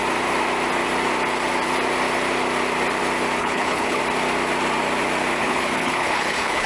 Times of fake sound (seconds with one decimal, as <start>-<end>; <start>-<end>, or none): 3.4-4.0; 5.4-6.7